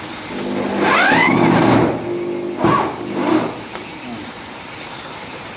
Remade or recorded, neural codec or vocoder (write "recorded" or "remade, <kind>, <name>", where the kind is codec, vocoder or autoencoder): recorded